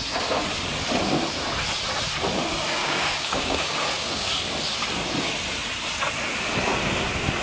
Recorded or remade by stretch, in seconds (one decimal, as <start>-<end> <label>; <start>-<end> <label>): 0.0-2.8 recorded; 2.8-4.3 remade; 4.3-7.4 recorded